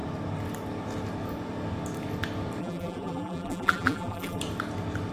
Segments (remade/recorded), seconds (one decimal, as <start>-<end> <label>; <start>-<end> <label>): 0.0-2.6 recorded; 2.6-4.4 remade; 4.4-5.1 recorded